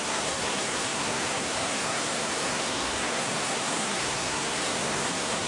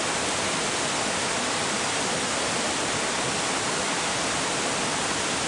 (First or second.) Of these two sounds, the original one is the second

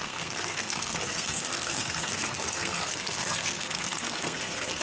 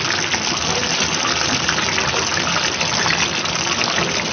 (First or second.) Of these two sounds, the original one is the second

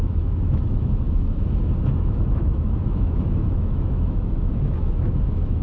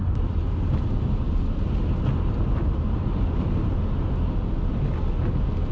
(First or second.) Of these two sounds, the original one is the second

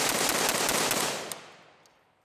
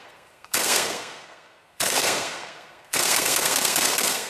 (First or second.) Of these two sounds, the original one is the first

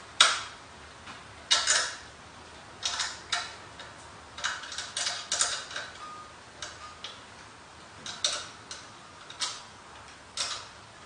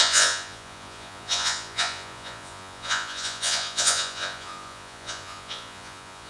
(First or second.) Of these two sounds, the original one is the first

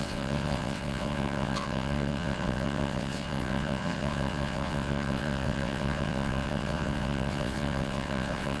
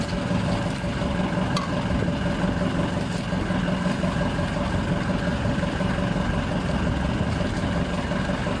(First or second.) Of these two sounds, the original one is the second